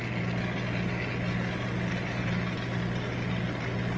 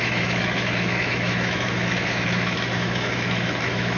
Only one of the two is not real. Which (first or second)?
second